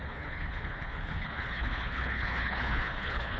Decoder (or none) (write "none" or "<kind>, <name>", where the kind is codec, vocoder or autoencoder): codec, HILCodec